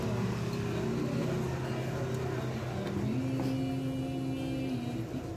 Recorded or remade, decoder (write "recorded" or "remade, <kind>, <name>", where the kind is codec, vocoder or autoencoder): recorded